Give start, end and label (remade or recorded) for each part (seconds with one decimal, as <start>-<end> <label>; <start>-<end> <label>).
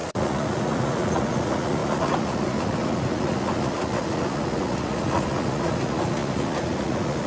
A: 0.0-7.3 remade